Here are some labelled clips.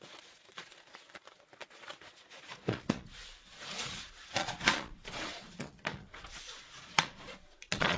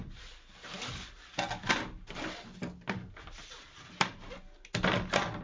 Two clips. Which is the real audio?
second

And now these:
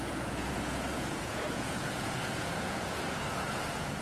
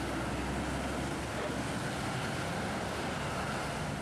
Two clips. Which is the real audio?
second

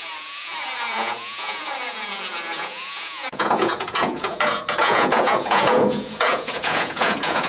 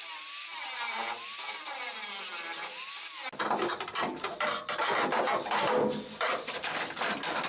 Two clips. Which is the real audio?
second